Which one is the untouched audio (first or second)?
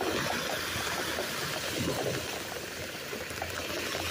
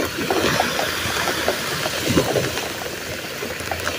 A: second